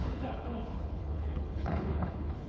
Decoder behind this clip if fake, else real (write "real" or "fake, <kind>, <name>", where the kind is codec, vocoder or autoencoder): fake, codec, HILCodec